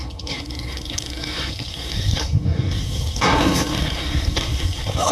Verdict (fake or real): fake